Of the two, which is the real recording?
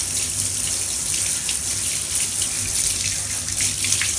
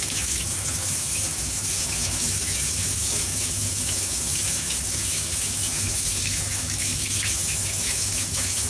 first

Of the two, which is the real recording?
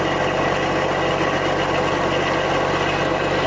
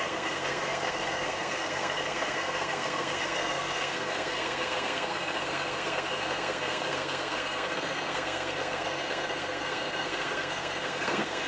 first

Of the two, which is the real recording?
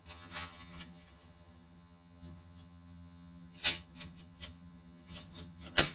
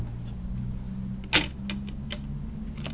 second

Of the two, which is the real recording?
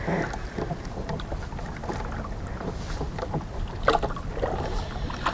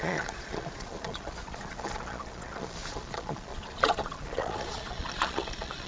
first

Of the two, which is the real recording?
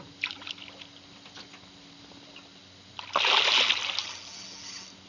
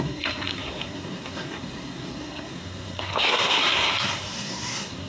first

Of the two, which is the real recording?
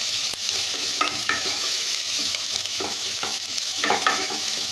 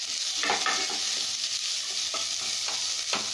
second